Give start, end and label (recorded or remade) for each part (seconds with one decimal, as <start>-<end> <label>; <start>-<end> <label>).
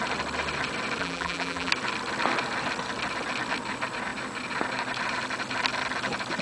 0.0-1.0 recorded; 1.0-1.7 remade; 1.7-6.4 recorded